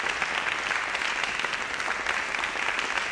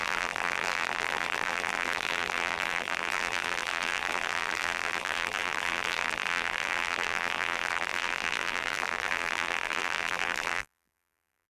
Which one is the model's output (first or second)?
second